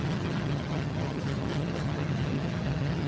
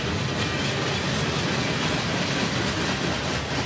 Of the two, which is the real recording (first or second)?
second